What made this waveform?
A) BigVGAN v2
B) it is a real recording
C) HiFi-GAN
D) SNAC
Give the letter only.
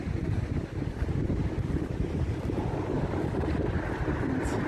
B